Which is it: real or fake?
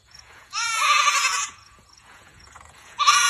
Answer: fake